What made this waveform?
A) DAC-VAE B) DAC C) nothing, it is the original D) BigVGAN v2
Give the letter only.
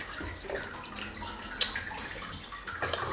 C